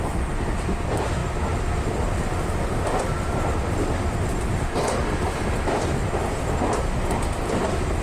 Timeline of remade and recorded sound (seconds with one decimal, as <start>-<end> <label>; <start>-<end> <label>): 0.0-8.0 recorded